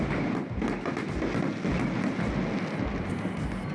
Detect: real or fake real